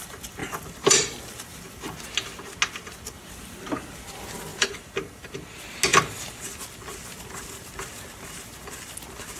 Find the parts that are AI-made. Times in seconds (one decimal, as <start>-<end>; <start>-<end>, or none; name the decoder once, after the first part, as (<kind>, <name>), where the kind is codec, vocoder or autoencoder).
0.4-1.3 (vocoder, BigVGAN v2); 4.5-5.3; 5.9-6.5